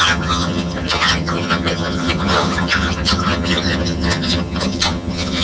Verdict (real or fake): fake